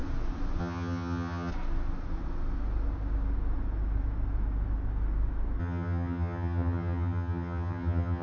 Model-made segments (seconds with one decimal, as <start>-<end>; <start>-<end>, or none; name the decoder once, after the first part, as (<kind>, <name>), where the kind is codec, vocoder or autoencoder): 0.6-1.5 (vocoder, HiFi-GAN); 5.6-8.2